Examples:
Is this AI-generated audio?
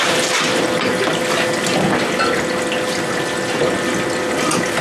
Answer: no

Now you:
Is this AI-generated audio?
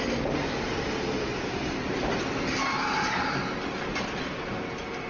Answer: no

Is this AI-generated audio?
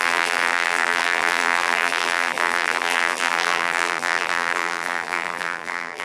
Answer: yes